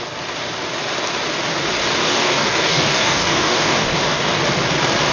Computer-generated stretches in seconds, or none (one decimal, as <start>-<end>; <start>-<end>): 2.0-4.4